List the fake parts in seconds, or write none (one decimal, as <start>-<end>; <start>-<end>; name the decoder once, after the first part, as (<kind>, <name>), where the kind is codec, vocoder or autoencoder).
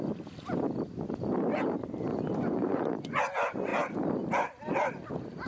2.1-3.2 (vocoder, Vocos)